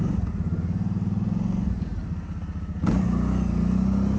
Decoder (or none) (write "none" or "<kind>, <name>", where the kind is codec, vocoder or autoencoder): none